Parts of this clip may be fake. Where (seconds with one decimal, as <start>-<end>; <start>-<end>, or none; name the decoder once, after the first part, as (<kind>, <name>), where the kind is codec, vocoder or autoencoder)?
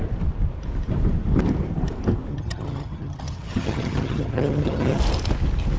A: 2.3-5.0 (vocoder, HiFi-GAN)